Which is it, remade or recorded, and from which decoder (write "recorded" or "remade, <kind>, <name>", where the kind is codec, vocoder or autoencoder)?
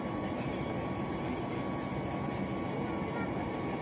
recorded